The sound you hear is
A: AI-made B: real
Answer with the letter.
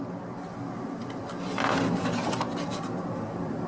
B